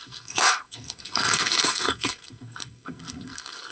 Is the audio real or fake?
fake